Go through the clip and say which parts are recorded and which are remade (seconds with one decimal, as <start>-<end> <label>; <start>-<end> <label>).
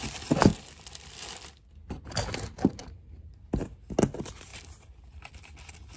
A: 0.0-2.8 recorded; 2.8-3.3 remade; 3.3-6.0 recorded